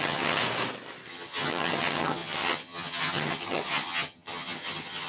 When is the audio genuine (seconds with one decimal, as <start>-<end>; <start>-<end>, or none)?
0.4-1.1